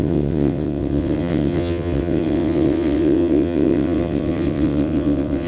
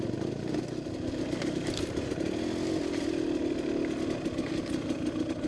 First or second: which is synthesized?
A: first